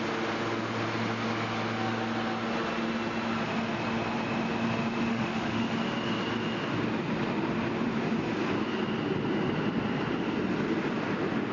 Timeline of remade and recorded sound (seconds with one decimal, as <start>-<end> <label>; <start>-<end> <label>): 0.0-5.1 recorded; 5.1-5.7 remade; 5.7-11.5 recorded